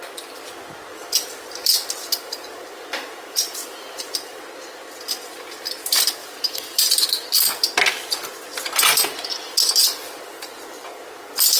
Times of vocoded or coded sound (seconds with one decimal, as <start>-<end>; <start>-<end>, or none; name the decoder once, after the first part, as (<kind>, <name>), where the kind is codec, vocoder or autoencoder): 0.9-4.4 (vocoder, BigVGAN v2); 6.2-6.9; 9.8-11.6